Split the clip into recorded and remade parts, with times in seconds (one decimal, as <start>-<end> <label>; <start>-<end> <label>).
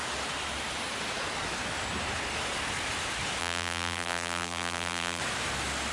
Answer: 0.0-3.4 recorded; 3.4-5.2 remade; 5.2-5.9 recorded